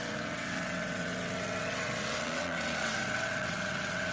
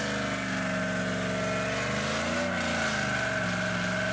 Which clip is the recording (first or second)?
second